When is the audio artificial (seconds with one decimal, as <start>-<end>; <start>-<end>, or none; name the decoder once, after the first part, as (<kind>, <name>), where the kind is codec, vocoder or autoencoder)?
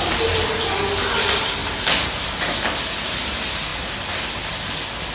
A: none